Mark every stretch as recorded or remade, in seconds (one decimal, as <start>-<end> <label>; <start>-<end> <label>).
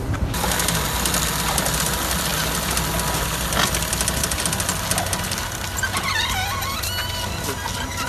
0.0-8.1 recorded